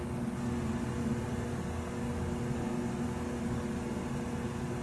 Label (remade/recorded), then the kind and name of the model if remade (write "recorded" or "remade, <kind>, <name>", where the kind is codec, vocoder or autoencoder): recorded